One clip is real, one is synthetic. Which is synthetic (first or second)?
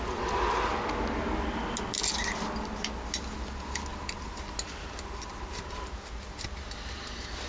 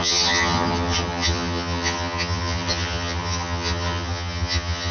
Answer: second